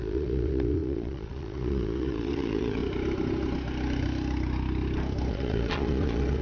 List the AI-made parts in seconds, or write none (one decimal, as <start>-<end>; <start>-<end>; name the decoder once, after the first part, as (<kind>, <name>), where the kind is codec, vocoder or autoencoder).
0.0-2.8 (vocoder, Vocos); 5.3-6.4